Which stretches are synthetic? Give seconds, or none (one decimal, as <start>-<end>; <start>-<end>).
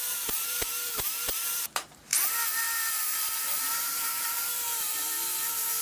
0.0-4.9